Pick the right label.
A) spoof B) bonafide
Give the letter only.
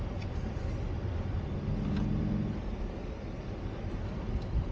B